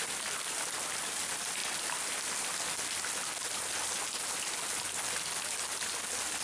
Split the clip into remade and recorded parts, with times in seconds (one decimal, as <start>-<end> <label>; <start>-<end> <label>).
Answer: 0.0-6.4 recorded